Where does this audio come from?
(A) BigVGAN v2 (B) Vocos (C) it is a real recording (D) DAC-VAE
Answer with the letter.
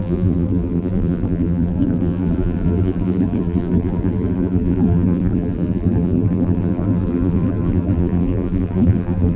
A